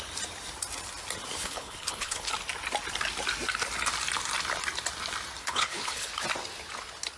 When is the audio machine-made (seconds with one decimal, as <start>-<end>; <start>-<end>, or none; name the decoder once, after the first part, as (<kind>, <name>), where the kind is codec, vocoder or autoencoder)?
1.4-2.3 (codec, HILCodec); 5.4-6.1